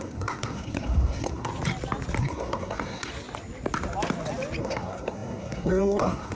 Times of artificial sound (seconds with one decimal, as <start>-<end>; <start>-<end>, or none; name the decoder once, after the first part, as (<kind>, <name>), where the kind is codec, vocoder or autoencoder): 0.0-1.5 (codec, SNAC); 2.2-3.1; 4.6-6.3